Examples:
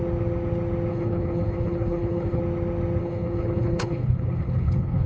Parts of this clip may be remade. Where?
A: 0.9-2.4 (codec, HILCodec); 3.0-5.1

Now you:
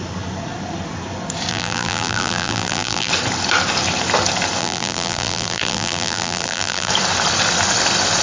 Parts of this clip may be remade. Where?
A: 1.5-3.1 (vocoder, BigVGAN v2); 4.6-6.9